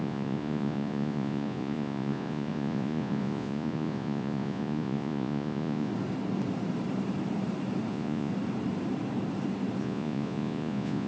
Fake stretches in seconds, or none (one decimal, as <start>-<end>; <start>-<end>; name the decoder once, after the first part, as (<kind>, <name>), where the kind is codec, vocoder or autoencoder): 0.0-5.9 (vocoder, Vocos); 7.9-8.3; 9.8-11.1